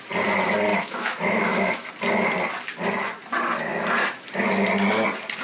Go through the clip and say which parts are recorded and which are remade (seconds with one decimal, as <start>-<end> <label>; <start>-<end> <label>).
0.0-0.7 recorded; 0.7-1.9 remade; 1.9-5.4 recorded